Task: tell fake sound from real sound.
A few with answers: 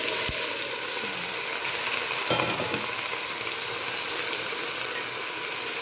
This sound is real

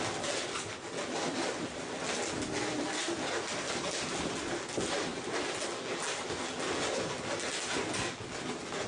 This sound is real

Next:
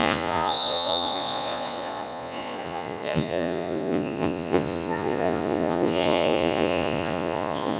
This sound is fake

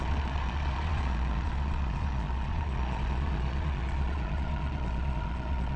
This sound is fake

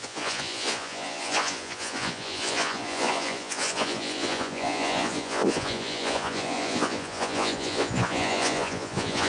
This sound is fake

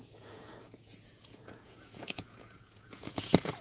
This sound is fake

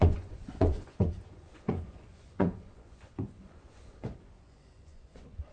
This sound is fake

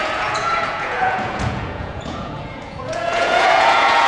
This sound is fake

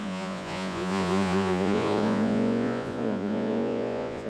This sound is fake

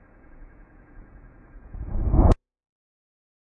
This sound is fake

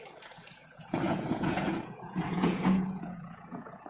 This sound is fake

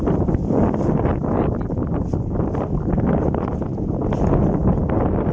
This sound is real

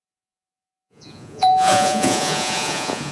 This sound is fake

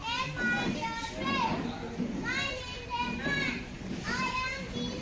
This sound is real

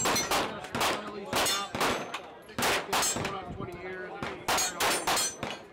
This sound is real